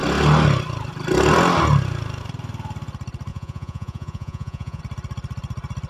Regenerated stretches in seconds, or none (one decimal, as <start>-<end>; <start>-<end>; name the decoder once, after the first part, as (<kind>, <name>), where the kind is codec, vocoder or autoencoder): 3.3-4.8 (vocoder, Vocos)

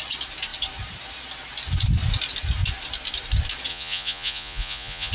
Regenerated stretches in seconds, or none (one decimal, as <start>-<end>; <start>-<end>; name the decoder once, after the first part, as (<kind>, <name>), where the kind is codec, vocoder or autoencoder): 3.7-5.1 (vocoder, Vocos)